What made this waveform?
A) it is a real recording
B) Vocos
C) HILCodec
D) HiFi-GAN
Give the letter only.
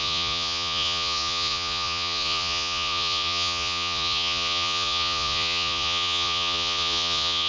B